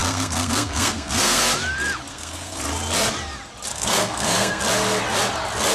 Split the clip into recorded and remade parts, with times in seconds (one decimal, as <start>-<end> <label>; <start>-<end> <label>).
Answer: 0.0-1.4 remade; 1.4-2.1 recorded; 2.1-2.6 remade; 2.6-3.7 recorded; 3.7-4.6 remade; 4.6-5.7 recorded